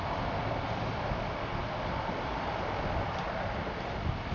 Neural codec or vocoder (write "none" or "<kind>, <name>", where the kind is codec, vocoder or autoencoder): none